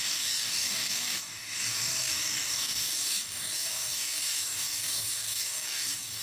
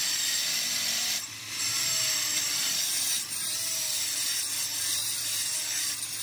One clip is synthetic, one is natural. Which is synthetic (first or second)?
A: first